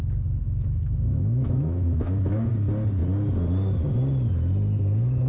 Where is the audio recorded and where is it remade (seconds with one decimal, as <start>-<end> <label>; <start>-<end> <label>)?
0.0-0.4 recorded; 0.4-2.5 remade; 2.5-5.3 recorded